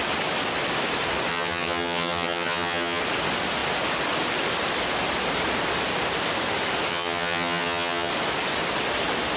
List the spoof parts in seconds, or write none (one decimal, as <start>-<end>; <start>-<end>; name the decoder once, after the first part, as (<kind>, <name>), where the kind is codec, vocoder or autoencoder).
1.3-3.0 (vocoder, HiFi-GAN); 6.9-8.1